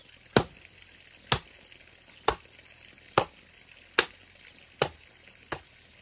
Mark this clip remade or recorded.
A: recorded